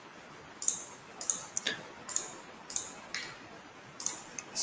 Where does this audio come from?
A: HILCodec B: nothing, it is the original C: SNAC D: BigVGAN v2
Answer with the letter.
B